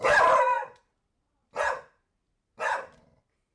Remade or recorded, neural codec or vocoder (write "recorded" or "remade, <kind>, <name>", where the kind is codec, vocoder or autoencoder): remade, vocoder, BigVGAN v2